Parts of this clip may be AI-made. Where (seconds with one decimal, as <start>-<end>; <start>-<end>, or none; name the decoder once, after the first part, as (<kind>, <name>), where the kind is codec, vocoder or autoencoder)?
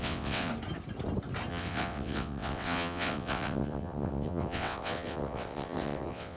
0.0-0.5 (vocoder, WaveNeXt); 1.5-6.4